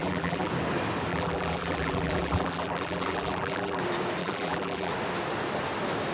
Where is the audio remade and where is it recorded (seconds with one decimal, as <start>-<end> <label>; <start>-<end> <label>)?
0.0-0.5 remade; 0.5-1.1 recorded; 1.1-3.8 remade; 3.8-4.2 recorded; 4.2-4.9 remade; 4.9-6.1 recorded